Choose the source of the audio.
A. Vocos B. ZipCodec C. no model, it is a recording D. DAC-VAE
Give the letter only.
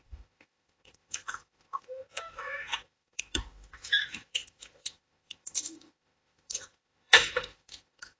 D